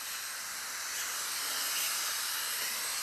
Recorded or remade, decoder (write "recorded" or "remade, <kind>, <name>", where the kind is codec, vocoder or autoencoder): recorded